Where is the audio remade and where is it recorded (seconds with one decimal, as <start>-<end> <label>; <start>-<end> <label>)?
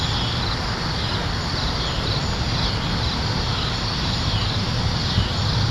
0.0-1.2 recorded; 1.2-4.4 remade; 4.4-5.7 recorded